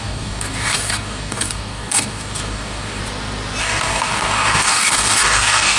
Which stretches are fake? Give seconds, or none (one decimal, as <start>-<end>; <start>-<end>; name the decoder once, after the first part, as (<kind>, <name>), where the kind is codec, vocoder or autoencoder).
0.0-3.0 (codec, DAC); 3.6-5.8